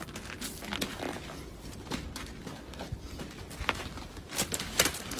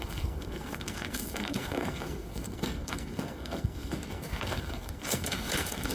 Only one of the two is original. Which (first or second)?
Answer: first